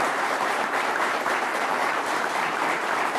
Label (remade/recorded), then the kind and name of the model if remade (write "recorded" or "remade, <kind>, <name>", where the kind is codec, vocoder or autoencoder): remade, vocoder, BigVGAN v2